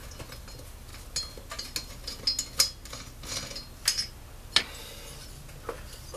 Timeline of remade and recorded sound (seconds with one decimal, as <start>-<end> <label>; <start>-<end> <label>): 0.0-6.2 recorded